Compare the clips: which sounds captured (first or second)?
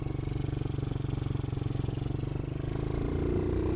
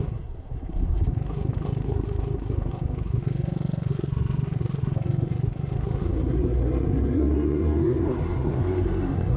first